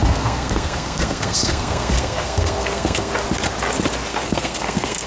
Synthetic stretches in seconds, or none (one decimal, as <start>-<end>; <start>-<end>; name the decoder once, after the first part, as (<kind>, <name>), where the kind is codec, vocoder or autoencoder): 0.0-3.1 (codec, SNAC); 4.1-5.1